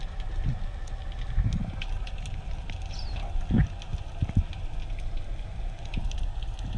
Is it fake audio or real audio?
real